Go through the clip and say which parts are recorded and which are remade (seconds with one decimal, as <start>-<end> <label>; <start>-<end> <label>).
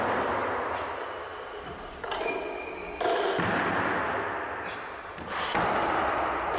0.0-6.6 recorded